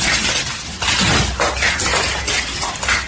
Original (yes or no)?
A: yes